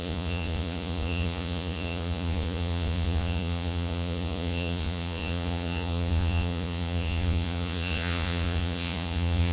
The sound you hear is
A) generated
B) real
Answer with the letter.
A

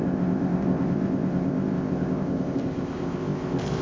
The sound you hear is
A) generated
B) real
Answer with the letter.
A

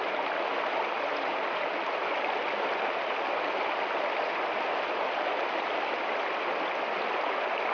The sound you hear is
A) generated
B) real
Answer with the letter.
B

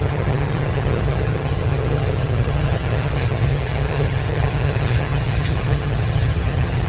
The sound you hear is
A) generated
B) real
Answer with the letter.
A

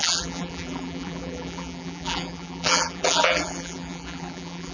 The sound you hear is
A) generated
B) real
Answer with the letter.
A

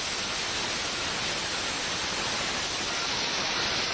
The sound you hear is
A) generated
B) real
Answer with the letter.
B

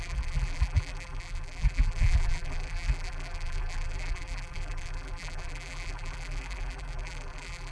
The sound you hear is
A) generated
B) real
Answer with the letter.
A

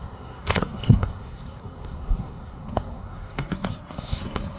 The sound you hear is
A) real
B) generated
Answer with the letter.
B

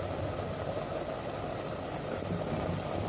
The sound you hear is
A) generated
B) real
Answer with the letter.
B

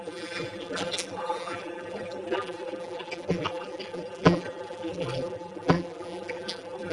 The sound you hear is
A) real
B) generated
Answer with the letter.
B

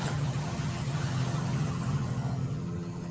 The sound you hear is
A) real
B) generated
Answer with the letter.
B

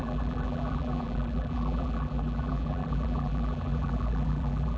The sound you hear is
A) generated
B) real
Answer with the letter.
A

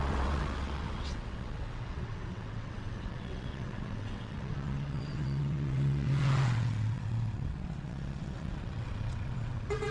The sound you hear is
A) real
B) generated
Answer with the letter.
B